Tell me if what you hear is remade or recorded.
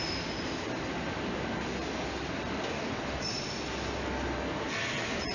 recorded